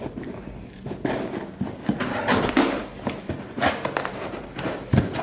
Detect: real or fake real